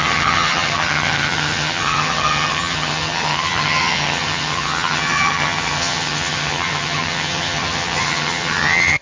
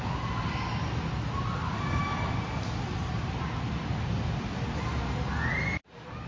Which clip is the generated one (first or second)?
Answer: first